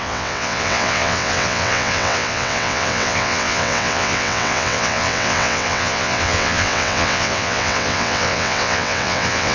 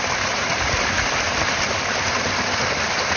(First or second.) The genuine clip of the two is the second